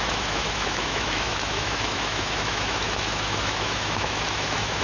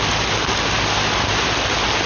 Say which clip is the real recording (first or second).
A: second